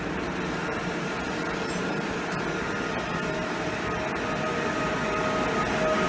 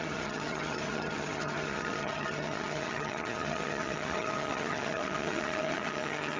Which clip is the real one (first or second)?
first